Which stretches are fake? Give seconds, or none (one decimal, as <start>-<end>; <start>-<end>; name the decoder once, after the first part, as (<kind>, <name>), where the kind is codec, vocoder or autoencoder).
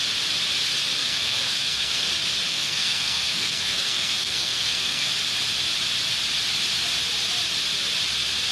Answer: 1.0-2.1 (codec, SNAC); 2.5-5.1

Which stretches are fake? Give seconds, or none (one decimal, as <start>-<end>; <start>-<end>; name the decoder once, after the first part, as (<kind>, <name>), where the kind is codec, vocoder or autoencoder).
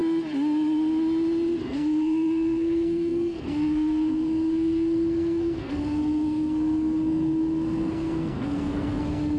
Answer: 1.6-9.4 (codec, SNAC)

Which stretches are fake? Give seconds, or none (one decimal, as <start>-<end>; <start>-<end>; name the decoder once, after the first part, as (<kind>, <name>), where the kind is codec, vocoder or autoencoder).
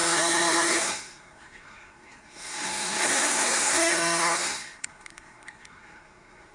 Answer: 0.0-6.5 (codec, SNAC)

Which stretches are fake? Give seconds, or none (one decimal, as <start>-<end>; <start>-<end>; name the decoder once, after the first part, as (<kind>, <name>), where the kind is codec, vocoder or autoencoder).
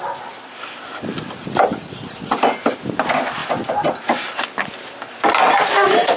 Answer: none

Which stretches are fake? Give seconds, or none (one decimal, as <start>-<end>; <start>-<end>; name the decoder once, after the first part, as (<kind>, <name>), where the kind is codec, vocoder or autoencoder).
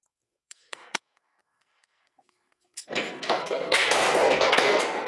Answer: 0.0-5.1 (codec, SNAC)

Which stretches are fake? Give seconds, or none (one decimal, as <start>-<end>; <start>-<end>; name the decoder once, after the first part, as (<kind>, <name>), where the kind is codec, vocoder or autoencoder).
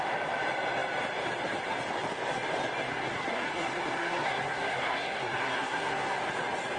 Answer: 2.8-6.2 (codec, SNAC)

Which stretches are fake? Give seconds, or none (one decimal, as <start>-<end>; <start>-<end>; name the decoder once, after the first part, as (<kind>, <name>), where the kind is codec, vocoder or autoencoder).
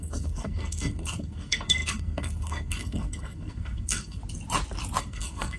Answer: 0.0-4.2 (codec, SNAC); 5.0-5.6